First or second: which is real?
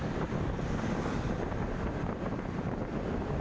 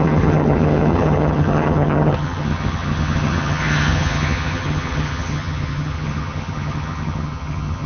first